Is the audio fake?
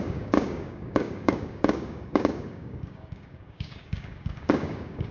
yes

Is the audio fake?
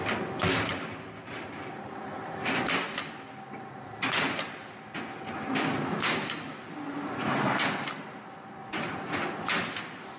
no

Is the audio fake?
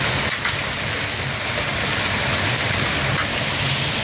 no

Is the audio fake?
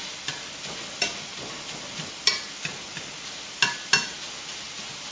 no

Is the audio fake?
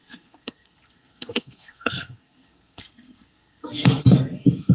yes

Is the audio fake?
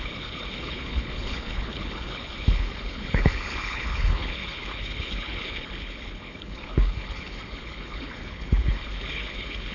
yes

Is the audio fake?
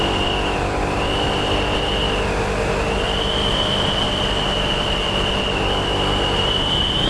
no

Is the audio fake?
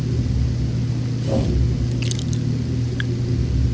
no